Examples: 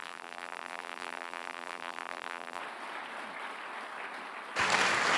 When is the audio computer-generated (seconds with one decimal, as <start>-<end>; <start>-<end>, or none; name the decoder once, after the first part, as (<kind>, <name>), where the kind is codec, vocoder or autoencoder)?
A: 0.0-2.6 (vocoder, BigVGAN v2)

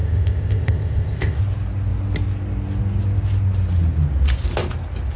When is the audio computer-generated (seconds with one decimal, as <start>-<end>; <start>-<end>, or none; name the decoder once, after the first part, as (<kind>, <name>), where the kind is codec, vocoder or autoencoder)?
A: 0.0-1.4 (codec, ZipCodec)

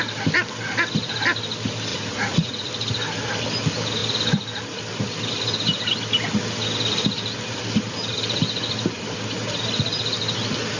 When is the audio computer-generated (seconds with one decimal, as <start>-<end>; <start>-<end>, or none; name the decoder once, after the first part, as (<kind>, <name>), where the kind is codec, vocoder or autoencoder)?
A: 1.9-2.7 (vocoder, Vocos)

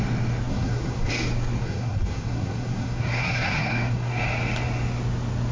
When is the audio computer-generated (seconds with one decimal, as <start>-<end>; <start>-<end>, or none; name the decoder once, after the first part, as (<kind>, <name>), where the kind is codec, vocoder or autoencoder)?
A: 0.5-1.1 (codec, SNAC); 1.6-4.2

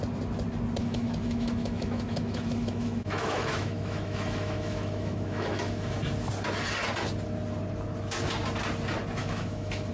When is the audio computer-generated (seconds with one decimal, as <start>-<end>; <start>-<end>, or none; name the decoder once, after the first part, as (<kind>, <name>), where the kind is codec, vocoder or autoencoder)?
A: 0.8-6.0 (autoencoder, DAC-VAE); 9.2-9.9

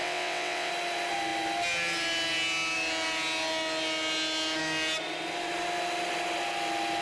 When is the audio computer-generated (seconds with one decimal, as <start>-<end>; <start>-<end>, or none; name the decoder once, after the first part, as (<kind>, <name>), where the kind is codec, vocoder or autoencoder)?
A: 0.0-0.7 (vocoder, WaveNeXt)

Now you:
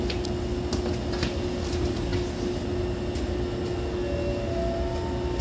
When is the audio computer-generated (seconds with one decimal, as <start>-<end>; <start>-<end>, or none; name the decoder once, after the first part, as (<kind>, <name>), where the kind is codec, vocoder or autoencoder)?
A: none